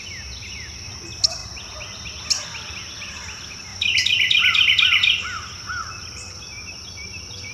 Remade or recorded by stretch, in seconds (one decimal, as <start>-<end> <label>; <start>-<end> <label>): 0.0-3.7 recorded; 3.7-6.3 remade; 6.3-7.5 recorded